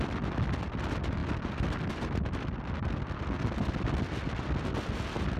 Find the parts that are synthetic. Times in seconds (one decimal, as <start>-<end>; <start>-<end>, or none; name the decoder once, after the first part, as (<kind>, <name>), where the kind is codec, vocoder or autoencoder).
none